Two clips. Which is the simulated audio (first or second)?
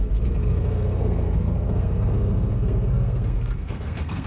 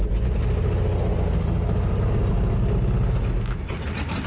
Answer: first